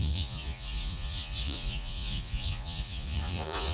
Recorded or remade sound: remade